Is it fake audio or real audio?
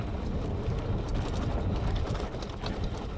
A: real